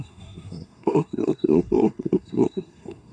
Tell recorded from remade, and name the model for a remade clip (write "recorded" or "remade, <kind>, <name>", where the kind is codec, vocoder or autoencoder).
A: remade, codec, SNAC